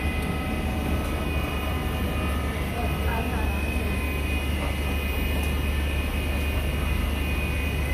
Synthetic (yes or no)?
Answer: no